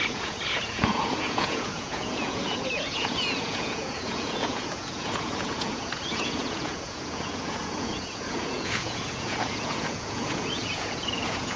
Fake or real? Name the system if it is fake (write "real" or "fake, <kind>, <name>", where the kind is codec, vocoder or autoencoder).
fake, vocoder, Vocos